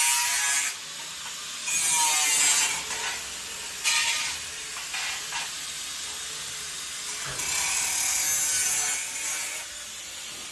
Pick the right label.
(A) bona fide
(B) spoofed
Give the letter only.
A